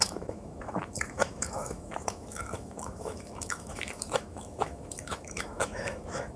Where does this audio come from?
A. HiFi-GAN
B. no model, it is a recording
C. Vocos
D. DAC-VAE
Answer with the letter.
D